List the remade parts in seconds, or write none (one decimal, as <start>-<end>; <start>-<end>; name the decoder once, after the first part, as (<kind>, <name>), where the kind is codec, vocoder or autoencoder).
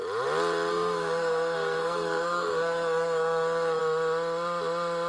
0.7-3.8 (codec, SNAC)